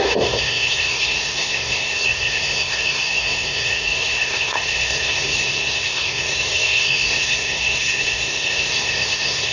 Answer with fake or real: fake